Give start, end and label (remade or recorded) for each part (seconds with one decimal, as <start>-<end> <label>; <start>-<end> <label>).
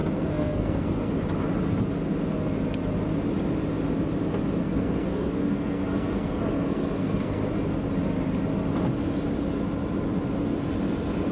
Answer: 0.0-1.1 remade; 1.1-4.6 recorded; 4.6-7.5 remade; 7.5-11.3 recorded